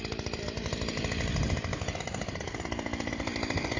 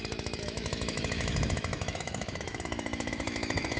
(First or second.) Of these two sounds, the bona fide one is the first